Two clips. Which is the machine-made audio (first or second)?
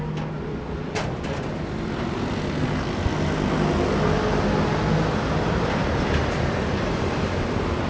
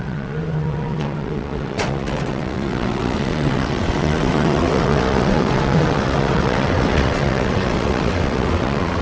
second